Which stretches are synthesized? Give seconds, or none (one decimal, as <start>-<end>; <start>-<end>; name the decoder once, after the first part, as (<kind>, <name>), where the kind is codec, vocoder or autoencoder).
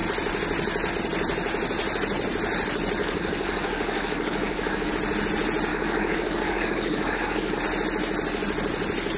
3.0-4.9 (codec, DAC); 5.7-7.6